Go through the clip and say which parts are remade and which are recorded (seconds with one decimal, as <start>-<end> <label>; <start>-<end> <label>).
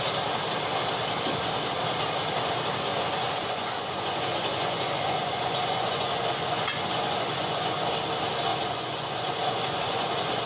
0.0-2.9 recorded; 2.9-7.9 remade; 7.9-8.5 recorded; 8.5-10.5 remade